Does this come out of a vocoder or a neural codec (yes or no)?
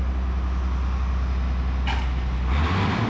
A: no